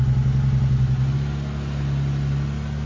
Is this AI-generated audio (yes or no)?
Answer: no